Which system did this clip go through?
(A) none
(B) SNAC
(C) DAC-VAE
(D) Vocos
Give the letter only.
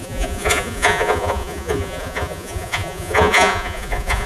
D